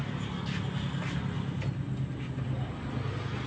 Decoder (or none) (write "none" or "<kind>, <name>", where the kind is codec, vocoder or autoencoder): none